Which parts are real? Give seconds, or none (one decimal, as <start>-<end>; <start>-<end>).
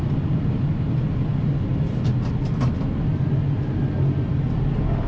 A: 0.0-5.1